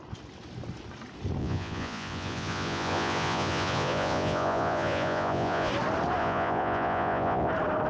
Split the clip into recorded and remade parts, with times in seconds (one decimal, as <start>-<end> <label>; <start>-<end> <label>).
0.0-1.4 recorded; 1.4-5.7 remade; 5.7-6.2 recorded; 6.2-7.5 remade; 7.5-7.9 recorded